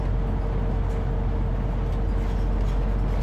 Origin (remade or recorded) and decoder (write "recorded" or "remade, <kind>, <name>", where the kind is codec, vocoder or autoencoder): recorded